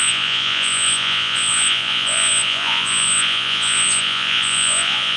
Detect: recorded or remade remade